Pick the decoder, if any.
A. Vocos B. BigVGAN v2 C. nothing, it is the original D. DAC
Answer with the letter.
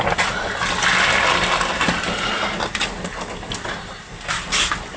C